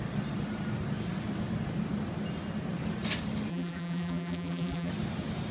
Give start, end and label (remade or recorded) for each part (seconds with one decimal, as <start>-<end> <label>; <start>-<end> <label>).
0.0-3.5 recorded; 3.5-4.9 remade; 4.9-5.5 recorded